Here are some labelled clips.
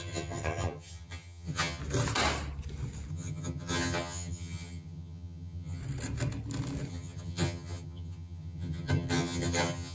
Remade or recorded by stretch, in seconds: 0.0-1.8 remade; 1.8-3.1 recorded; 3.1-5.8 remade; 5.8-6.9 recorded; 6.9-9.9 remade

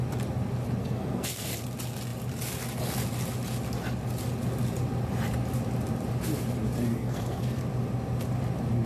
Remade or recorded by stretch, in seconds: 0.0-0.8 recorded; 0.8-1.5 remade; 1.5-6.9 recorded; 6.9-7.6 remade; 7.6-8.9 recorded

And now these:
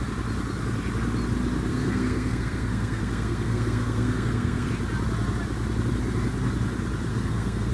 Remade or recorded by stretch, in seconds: 0.0-1.7 recorded; 1.7-4.7 remade; 4.7-7.1 recorded; 7.1-7.7 remade

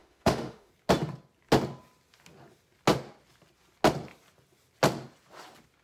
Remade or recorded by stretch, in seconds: 0.0-0.7 remade; 0.7-5.8 recorded

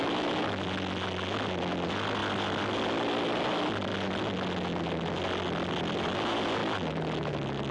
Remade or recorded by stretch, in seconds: 0.0-7.7 recorded

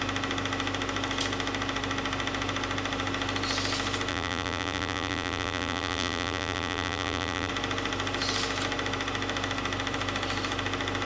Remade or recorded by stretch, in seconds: 0.0-4.1 recorded; 4.1-7.5 remade; 7.5-11.0 recorded

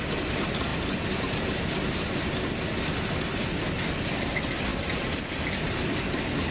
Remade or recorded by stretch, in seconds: 0.0-6.5 recorded

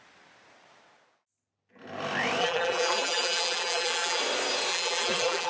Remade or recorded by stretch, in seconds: 0.0-2.4 recorded; 2.4-4.2 remade; 4.2-4.7 recorded; 4.7-5.5 remade